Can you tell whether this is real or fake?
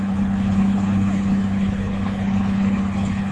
fake